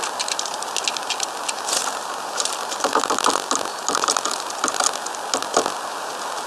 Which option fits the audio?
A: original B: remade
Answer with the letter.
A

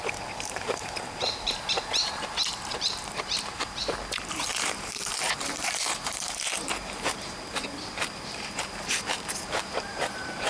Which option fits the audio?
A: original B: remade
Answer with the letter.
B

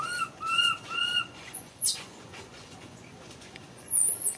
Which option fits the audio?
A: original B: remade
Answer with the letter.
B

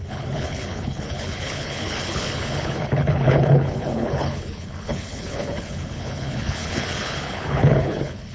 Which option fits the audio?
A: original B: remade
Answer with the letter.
B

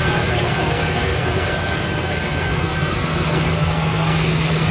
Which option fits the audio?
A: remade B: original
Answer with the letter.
A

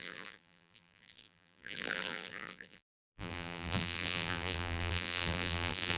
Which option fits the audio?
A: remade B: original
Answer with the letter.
A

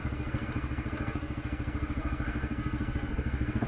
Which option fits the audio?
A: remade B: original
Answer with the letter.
A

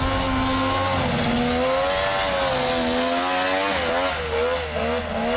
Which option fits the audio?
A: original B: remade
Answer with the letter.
A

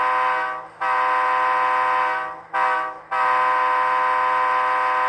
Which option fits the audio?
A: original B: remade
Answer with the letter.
A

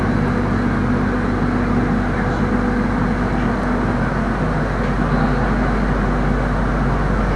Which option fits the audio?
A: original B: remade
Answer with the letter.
A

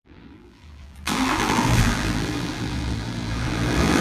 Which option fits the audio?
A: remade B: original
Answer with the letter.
A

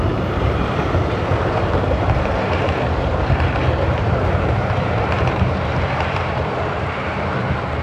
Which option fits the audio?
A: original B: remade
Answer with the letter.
B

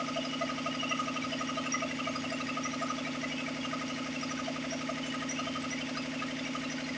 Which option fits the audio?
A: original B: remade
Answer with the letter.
A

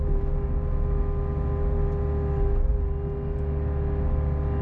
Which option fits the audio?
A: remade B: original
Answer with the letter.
B